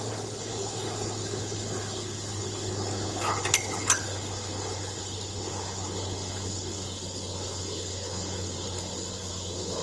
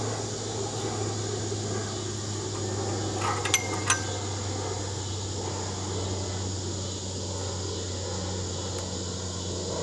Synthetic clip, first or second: first